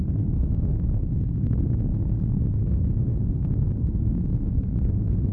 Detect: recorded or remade remade